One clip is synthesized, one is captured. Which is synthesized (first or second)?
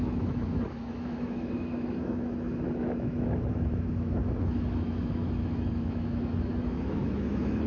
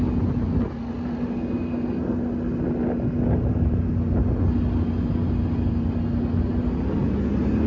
first